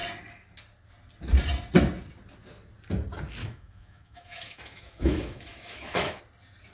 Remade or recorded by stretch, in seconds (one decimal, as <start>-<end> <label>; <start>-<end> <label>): 0.0-3.4 recorded; 3.4-6.2 remade; 6.2-6.7 recorded